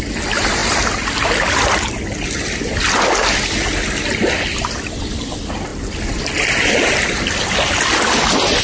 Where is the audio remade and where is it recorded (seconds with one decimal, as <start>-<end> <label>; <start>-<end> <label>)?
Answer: 0.0-8.6 recorded